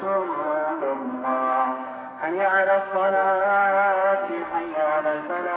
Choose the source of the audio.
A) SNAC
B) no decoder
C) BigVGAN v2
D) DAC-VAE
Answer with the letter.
A